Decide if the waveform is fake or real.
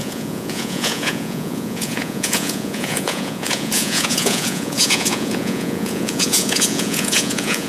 fake